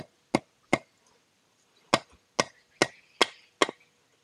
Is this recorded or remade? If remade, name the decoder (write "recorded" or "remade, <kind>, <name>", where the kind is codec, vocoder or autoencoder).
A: recorded